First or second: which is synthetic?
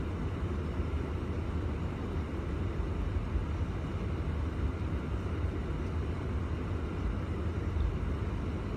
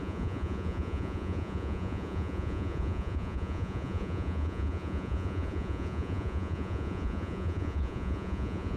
second